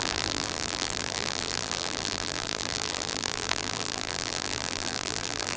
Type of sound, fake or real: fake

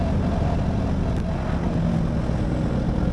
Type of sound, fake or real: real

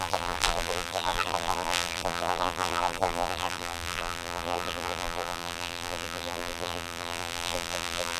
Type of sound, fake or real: fake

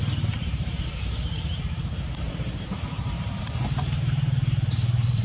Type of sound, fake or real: fake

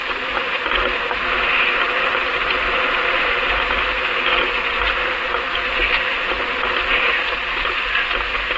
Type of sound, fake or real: real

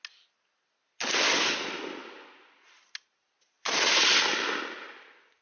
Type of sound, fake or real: real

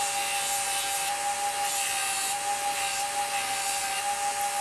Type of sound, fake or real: real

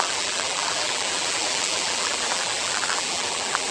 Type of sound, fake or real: fake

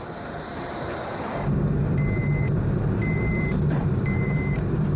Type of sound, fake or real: fake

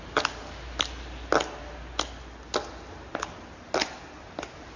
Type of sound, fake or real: real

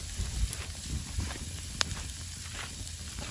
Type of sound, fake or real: fake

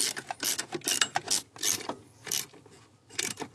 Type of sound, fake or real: real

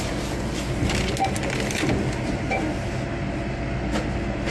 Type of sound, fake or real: real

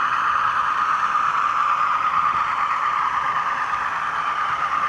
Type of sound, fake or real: fake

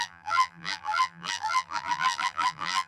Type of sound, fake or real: fake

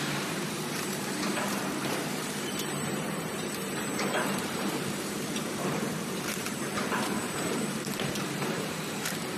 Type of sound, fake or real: fake